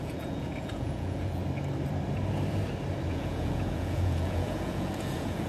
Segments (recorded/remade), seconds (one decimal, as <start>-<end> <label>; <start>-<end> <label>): 0.0-1.4 remade; 1.4-3.1 recorded; 3.1-5.5 remade